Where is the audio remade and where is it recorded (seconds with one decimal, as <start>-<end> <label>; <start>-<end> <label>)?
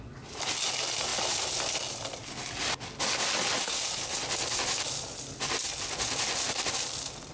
0.0-7.3 recorded